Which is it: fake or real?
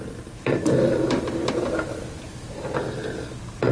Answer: fake